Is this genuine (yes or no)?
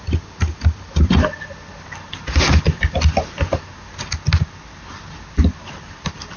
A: yes